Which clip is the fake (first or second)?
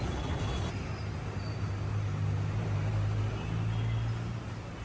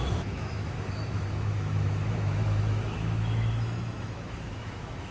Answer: second